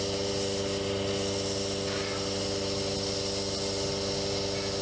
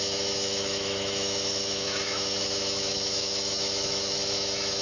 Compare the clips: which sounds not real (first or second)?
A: second